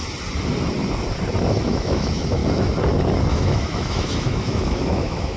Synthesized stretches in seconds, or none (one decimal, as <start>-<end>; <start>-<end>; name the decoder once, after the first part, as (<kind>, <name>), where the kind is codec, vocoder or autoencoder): 1.5-2.4 (autoencoder, DAC-VAE); 3.3-5.4